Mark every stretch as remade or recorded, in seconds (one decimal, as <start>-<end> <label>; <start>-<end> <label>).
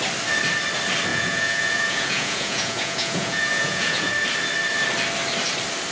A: 0.0-1.1 recorded; 1.1-4.1 remade; 4.1-5.9 recorded